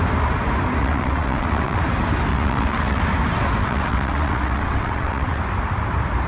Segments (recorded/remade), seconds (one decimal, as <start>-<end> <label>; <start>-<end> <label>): 0.0-0.8 recorded; 0.8-1.8 remade; 1.8-2.3 recorded; 2.3-3.0 remade; 3.0-3.6 recorded; 3.6-5.4 remade; 5.4-6.3 recorded

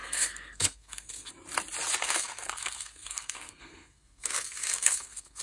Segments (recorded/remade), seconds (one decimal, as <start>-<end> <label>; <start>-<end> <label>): 0.0-1.3 remade; 1.3-2.0 recorded; 2.0-5.4 remade

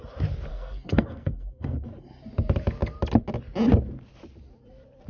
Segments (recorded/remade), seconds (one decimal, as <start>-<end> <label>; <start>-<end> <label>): 0.0-0.5 recorded; 0.5-1.9 remade; 1.9-5.1 recorded

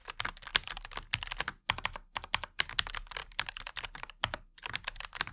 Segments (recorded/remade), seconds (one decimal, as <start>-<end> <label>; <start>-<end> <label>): 0.0-3.2 recorded; 3.2-5.3 remade

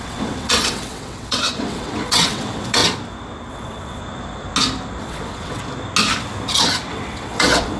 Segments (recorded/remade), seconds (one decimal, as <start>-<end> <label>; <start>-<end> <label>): 0.0-2.8 remade; 2.8-3.5 recorded; 3.5-4.0 remade; 4.0-5.0 recorded; 5.0-5.6 remade; 5.6-6.9 recorded; 6.9-7.8 remade

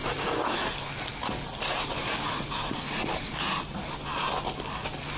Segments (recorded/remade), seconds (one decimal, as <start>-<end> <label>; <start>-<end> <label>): 0.0-5.2 recorded

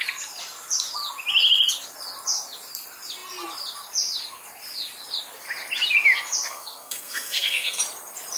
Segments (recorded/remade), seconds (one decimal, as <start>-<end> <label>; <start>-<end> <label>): 0.0-6.5 recorded; 6.5-7.8 remade; 7.8-8.4 recorded

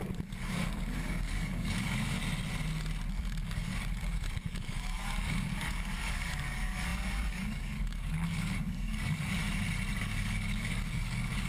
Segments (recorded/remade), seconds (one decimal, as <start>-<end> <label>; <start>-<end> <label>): 0.0-2.2 remade; 2.2-3.2 recorded; 3.2-9.4 remade; 9.4-10.0 recorded; 10.0-11.5 remade